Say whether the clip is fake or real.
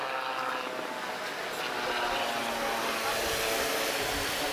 real